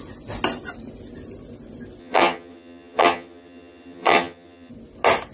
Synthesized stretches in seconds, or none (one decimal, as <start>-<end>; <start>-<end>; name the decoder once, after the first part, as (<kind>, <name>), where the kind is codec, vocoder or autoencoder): 2.0-4.7 (vocoder, HiFi-GAN)